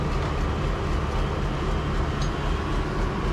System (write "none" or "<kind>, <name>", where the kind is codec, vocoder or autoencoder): none